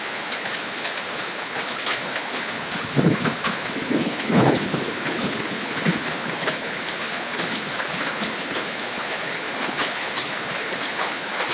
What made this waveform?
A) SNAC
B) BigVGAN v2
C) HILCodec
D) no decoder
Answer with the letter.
C